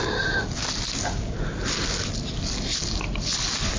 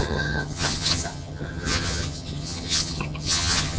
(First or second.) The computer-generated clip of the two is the second